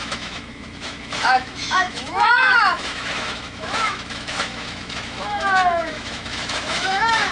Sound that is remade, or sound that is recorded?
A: remade